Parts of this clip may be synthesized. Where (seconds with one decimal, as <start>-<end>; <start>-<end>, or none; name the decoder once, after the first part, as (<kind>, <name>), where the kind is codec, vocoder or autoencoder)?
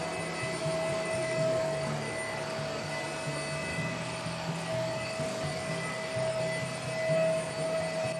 0.9-2.9 (codec, DAC); 3.7-6.4